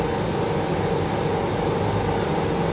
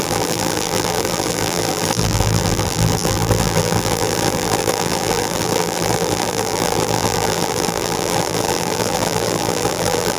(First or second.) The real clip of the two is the first